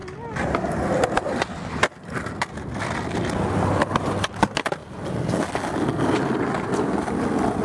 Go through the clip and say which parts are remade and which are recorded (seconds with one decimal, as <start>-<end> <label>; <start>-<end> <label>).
0.0-7.6 recorded